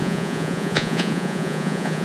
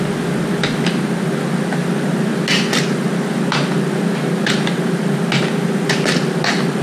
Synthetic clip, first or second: first